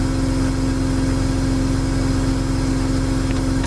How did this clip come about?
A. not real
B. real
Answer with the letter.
B